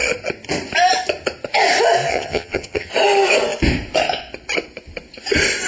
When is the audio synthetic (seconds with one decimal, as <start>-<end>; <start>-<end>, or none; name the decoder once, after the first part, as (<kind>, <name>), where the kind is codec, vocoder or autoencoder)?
2.1-2.9 (vocoder, HiFi-GAN)